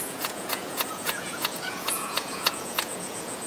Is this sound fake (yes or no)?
yes